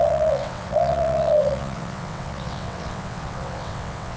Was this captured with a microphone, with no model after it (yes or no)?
no